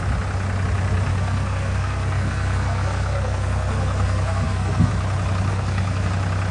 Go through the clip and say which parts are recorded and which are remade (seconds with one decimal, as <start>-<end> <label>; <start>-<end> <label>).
0.0-1.1 recorded; 1.1-4.9 remade; 4.9-5.5 recorded; 5.5-6.1 remade; 6.1-6.5 recorded